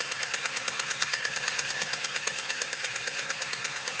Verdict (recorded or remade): remade